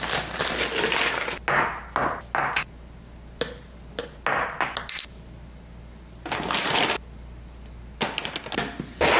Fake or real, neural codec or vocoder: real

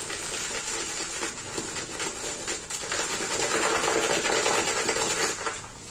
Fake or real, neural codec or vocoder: real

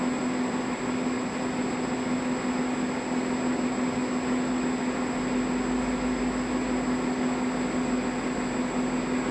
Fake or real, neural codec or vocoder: real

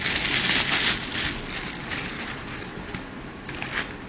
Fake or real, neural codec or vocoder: real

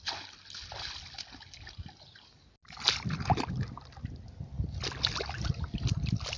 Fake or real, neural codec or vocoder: real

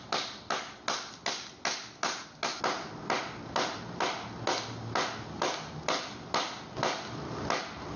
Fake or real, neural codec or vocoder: real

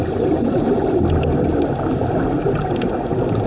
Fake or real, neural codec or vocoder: real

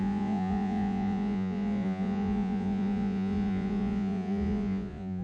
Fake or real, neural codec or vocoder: fake, vocoder, Vocos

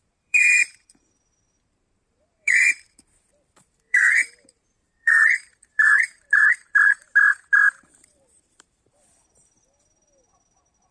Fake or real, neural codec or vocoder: fake, vocoder, BigVGAN v2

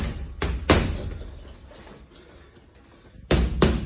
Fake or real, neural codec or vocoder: real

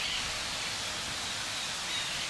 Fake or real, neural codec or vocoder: real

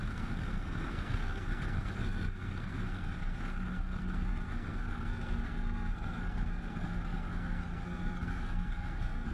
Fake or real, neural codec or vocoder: fake, codec, SNAC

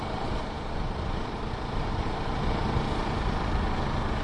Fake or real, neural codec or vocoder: fake, vocoder, BigVGAN v2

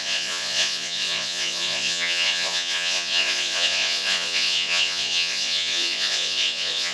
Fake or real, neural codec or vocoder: fake, vocoder, Vocos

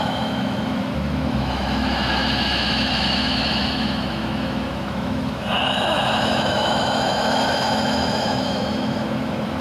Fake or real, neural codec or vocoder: fake, autoencoder, DAC-VAE